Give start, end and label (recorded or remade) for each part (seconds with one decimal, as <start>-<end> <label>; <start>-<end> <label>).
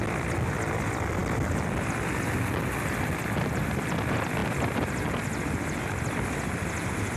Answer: 0.0-7.2 recorded